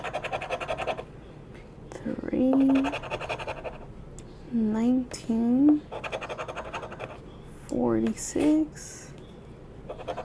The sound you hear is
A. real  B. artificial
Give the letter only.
A